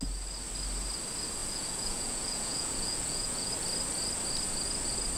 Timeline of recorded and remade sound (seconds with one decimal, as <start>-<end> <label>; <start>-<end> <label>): 0.0-1.4 recorded; 1.4-3.5 remade; 3.5-5.2 recorded